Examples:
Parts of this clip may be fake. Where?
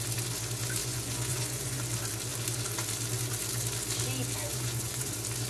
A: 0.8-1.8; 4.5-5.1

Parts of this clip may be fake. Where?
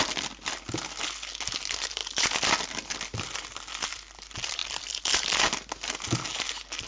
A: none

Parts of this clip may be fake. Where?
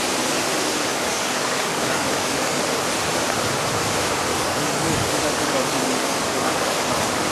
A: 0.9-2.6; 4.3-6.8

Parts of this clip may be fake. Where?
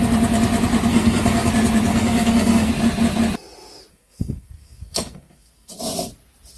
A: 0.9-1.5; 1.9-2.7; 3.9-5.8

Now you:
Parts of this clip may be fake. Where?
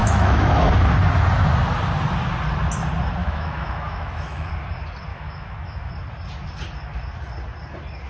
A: 0.0-0.7; 3.2-4.5; 5.1-5.9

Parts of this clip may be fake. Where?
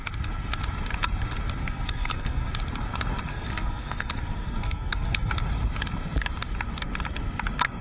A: 1.6-2.5; 3.3-5.3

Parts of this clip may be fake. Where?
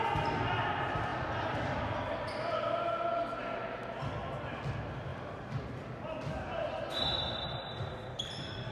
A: 1.1-2.0; 5.1-7.0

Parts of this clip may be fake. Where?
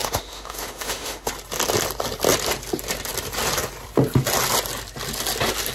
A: 0.0-1.3